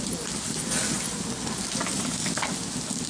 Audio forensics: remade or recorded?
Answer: recorded